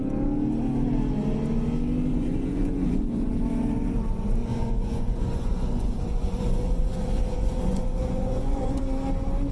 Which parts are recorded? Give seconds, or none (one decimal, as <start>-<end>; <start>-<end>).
0.0-2.1; 3.3-4.4; 8.8-9.5

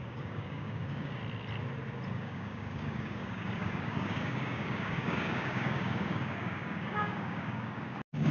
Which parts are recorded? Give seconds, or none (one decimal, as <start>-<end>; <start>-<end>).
1.2-2.1

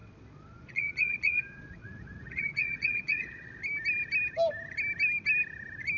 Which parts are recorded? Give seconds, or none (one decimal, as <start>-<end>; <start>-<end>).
3.6-6.0